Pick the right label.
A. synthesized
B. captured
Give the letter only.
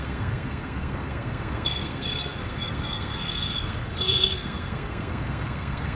A